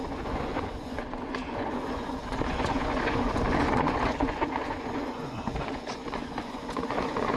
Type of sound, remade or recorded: remade